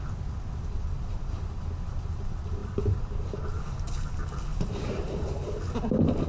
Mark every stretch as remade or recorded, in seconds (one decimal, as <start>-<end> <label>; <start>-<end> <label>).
0.0-4.5 recorded; 4.5-5.2 remade; 5.2-6.3 recorded